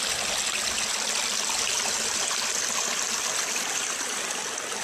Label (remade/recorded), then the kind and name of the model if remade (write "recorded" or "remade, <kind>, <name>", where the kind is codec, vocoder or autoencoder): recorded